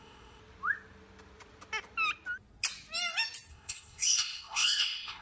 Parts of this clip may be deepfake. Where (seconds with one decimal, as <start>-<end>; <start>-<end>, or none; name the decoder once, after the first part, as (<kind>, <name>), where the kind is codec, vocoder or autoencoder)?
0.0-0.4 (codec, ZipCodec); 3.5-5.2